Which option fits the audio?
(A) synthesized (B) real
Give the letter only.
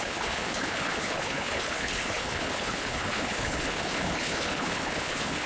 A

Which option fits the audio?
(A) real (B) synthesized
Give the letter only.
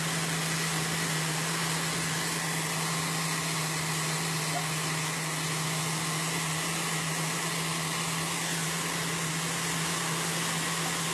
A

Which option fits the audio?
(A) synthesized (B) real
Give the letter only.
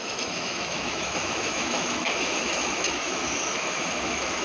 A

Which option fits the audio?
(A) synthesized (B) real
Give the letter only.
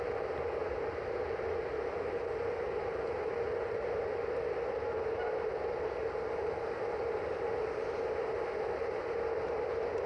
B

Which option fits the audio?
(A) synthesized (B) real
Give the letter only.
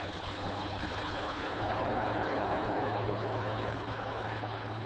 A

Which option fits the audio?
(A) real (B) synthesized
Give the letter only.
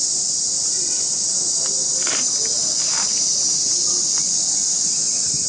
A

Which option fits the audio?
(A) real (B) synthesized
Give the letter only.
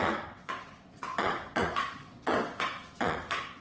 B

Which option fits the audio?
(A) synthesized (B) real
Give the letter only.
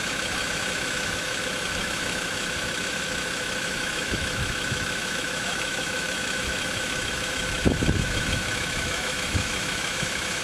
A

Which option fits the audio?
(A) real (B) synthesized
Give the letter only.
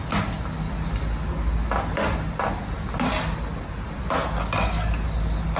A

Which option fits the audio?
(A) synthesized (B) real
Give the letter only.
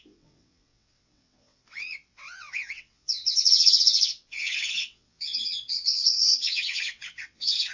A